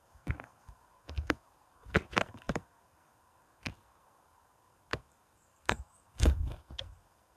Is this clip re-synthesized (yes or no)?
yes